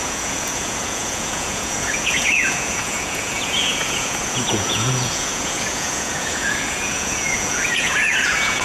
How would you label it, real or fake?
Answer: fake